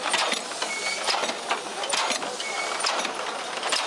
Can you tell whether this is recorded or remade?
recorded